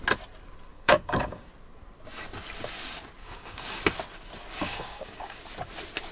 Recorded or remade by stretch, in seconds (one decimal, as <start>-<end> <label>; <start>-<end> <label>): 0.0-0.7 recorded; 0.7-1.5 remade; 1.5-3.2 recorded; 3.2-3.8 remade; 3.8-4.6 recorded; 4.6-5.4 remade; 5.4-6.1 recorded